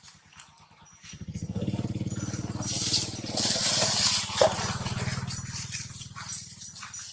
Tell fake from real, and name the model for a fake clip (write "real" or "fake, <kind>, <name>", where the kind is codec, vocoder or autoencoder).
real